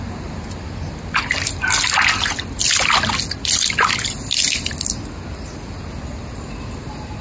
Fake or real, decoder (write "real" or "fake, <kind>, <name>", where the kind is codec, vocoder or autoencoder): real